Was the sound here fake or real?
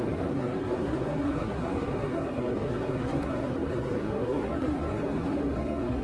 fake